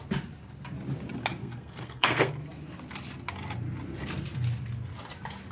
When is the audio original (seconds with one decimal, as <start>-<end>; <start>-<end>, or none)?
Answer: 0.0-1.4; 2.3-5.5